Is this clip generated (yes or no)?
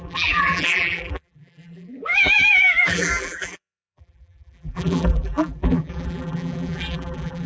yes